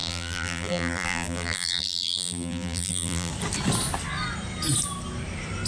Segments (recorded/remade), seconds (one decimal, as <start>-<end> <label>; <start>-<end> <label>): 0.0-3.3 remade; 3.3-5.7 recorded